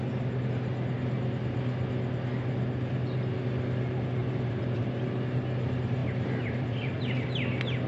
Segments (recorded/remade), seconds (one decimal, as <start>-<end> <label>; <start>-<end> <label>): 0.0-4.2 recorded; 4.2-4.8 remade; 4.8-6.0 recorded; 6.0-7.0 remade; 7.0-7.9 recorded